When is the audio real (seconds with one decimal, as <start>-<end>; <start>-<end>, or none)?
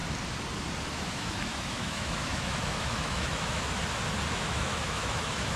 0.0-0.9; 3.8-4.3